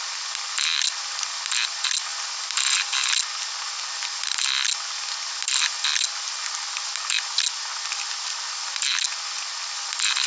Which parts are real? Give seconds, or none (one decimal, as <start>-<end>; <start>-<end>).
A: 0.0-10.3